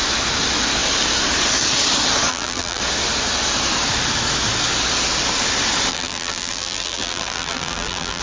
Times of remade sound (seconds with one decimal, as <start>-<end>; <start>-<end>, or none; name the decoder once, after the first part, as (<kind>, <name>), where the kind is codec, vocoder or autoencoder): 2.3-2.8 (vocoder, BigVGAN v2); 5.9-8.2